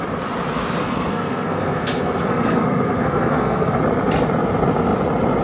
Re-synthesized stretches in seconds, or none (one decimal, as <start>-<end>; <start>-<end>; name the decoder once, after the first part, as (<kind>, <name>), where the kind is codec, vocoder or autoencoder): 0.8-3.8 (codec, SNAC)